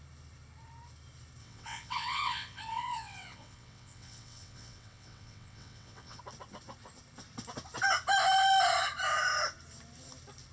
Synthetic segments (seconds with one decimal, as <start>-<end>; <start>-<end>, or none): 1.4-6.2